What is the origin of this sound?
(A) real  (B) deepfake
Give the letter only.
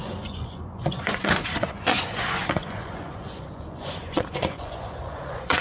B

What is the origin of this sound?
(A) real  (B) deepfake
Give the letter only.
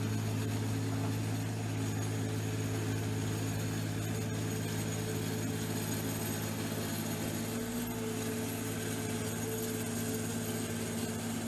A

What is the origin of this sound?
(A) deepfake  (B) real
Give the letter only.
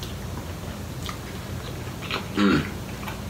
B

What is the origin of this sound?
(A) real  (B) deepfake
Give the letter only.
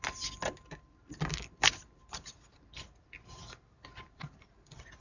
A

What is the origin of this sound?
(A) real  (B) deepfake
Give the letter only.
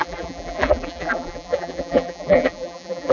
B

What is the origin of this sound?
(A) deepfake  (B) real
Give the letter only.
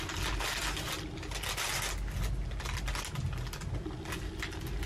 B